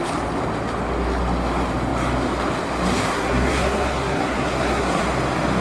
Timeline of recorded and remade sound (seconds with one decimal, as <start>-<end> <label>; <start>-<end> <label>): 0.0-3.1 recorded; 3.1-5.0 remade; 5.0-5.6 recorded